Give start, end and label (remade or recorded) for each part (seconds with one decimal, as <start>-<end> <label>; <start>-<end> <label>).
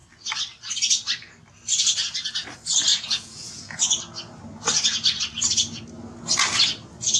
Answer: 0.0-2.9 recorded; 2.9-3.8 remade; 3.8-7.2 recorded